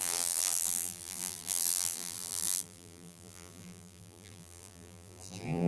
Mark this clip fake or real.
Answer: fake